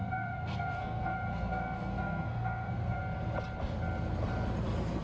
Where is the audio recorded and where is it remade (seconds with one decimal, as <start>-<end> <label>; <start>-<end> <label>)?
0.0-3.0 remade; 3.0-5.0 recorded